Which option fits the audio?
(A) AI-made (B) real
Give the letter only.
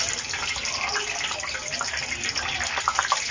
B